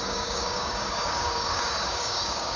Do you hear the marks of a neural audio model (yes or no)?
yes